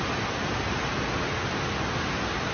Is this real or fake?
real